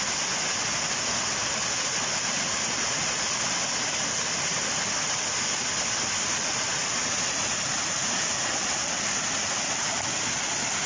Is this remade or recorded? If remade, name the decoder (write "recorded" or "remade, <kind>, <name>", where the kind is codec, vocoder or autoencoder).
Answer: recorded